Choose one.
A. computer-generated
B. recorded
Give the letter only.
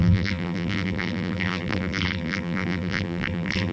A